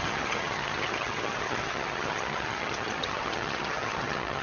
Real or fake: fake